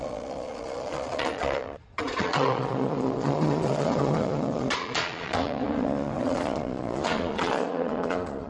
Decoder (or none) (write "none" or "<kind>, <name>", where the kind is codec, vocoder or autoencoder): vocoder, Vocos